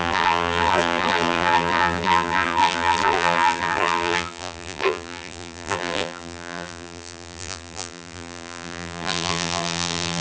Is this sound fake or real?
fake